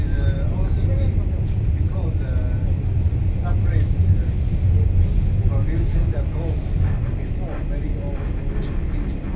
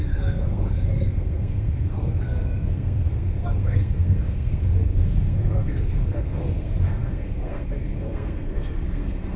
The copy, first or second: second